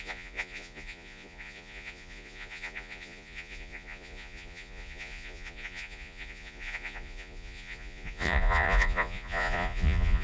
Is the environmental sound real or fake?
fake